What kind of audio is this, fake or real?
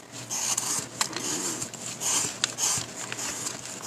real